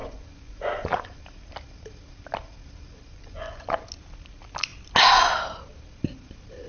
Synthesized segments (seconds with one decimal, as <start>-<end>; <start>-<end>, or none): 0.0-1.2; 2.9-3.8